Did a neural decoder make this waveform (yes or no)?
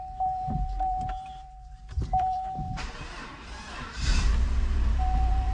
yes